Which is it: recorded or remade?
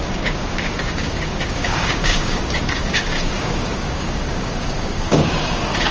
remade